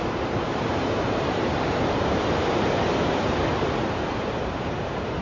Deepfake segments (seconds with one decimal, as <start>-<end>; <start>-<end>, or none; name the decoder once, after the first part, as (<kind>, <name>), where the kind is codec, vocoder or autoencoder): 0.0-3.5 (vocoder, BigVGAN v2); 4.1-5.2